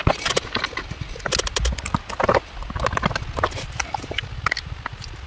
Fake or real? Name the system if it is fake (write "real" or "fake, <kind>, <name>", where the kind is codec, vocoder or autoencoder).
real